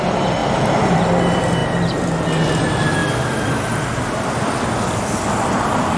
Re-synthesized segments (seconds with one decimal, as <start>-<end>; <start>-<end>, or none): 0.4-1.0; 1.6-2.2; 3.0-6.0